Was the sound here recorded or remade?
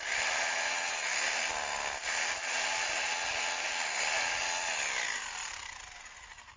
recorded